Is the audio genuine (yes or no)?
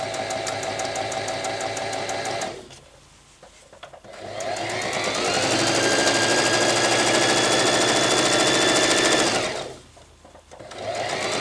yes